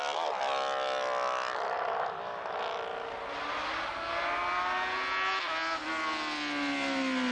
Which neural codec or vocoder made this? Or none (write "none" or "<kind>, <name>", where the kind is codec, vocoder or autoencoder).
none